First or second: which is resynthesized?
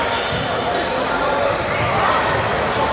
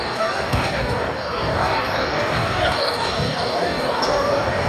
second